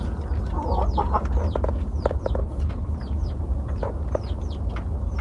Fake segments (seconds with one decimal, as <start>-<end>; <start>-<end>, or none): 2.4-2.9